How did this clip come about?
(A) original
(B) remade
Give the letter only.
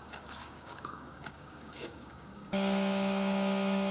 B